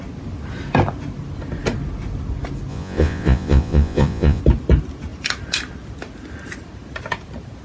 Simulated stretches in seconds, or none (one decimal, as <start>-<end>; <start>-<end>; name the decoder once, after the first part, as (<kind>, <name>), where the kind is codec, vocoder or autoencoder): 2.7-4.4 (vocoder, Vocos)